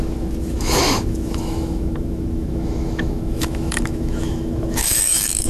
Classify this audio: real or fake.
fake